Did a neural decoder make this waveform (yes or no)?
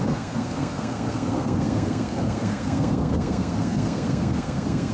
yes